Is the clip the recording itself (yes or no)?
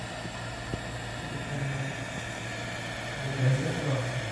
yes